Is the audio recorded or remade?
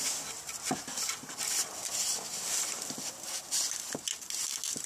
recorded